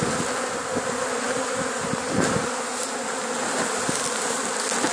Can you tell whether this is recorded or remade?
recorded